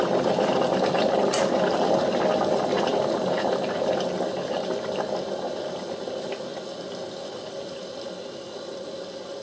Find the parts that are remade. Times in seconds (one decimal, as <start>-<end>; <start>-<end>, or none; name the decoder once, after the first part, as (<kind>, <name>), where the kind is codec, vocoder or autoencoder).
none